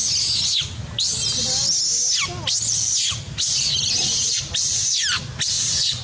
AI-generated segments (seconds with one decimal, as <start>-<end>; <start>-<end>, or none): 0.6-1.1; 4.3-6.0